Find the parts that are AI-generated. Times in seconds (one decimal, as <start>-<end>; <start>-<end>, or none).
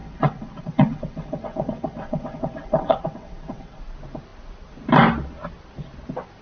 0.0-3.8